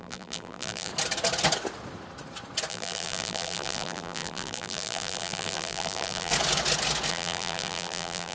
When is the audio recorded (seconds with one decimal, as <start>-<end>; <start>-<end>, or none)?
0.9-2.7; 6.3-7.1